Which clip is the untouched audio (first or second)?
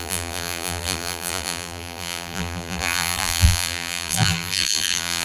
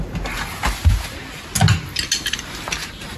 second